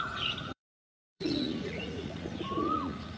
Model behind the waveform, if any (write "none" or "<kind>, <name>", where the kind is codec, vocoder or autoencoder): vocoder, Vocos